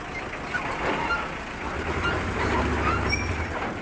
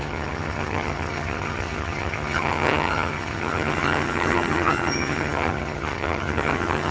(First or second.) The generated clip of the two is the second